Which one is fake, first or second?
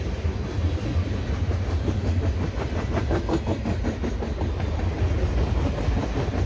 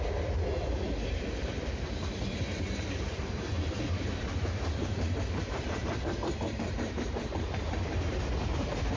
second